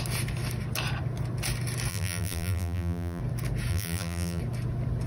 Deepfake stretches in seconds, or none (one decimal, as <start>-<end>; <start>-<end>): 1.9-3.2; 3.7-4.4